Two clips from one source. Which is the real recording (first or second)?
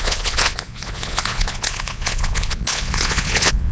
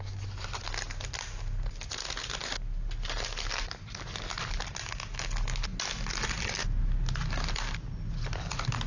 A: second